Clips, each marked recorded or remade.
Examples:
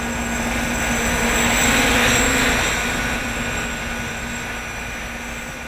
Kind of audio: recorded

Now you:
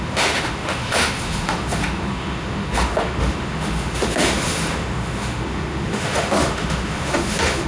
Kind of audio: remade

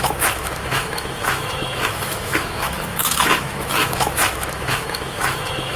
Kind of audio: remade